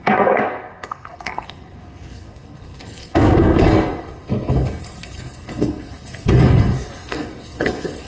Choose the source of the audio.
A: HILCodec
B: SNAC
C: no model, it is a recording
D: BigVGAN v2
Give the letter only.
B